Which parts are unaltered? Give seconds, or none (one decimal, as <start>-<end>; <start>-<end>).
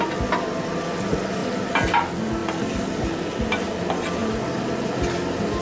0.0-1.4; 1.9-2.4; 3.1-5.6